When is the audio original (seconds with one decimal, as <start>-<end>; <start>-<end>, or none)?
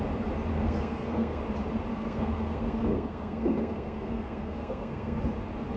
0.0-0.5; 1.4-1.9; 5.2-5.8